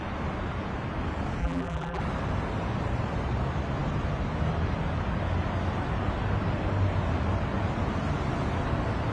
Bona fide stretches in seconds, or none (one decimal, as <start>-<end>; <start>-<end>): 0.0-1.4; 2.0-9.1